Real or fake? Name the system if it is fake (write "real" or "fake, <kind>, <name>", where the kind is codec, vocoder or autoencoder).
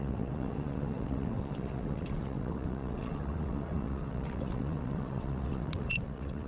fake, vocoder, WaveNeXt